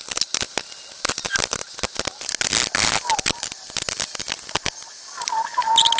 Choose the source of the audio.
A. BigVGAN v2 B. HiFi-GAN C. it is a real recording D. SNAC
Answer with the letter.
C